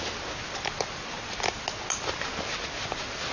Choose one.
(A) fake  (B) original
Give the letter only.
B